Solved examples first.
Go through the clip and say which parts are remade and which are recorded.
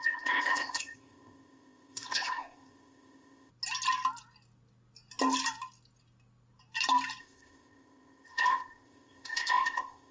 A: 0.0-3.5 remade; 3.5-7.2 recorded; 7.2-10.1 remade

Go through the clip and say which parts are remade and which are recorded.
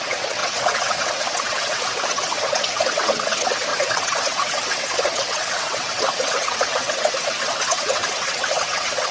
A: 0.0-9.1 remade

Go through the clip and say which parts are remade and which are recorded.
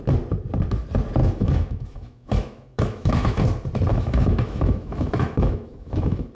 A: 0.0-1.2 recorded; 1.2-3.4 remade; 3.4-3.9 recorded; 3.9-6.3 remade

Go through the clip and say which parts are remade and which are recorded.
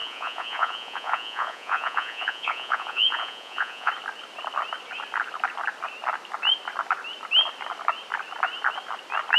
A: 0.0-3.9 remade; 3.9-9.4 recorded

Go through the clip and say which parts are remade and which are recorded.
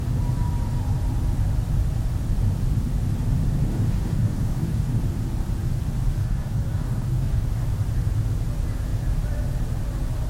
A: 0.0-3.7 recorded; 3.7-5.0 remade; 5.0-6.2 recorded; 6.2-7.5 remade; 7.5-10.3 recorded